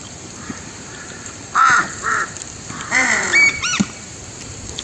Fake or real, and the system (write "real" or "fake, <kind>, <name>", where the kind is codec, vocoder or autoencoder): fake, vocoder, BigVGAN v2